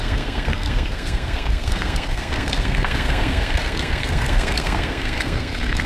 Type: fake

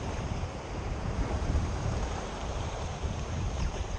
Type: fake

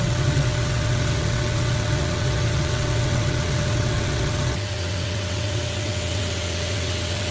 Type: fake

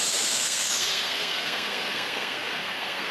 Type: fake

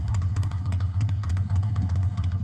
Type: fake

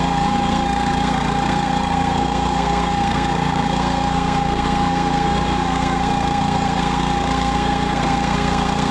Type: fake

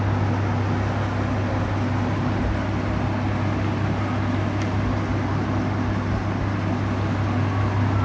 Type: real